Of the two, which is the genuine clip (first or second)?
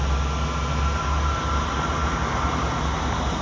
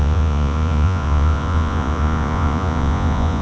first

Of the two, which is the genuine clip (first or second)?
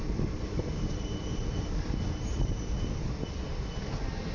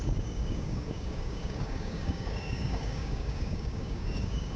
first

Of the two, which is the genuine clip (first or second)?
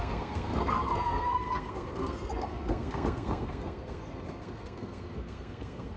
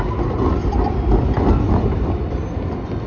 second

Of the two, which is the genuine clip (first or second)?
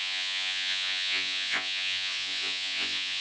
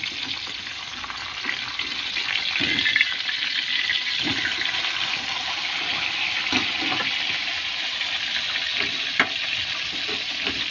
second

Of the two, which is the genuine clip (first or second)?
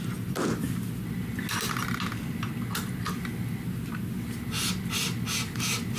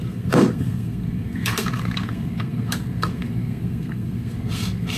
first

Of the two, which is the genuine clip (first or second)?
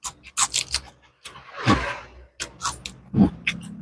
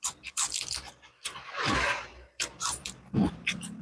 first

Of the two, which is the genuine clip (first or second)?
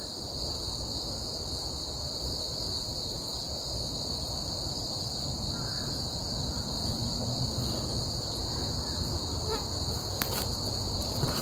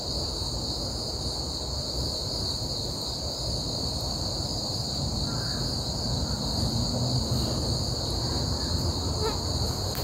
second